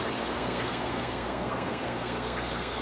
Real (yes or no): no